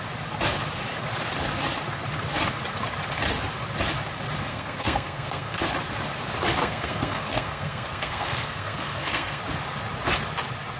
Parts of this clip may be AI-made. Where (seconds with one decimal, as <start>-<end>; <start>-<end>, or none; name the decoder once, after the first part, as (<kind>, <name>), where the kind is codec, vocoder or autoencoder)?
4.5-5.7 (codec, SNAC); 6.6-9.4